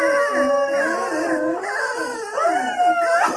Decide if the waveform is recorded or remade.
recorded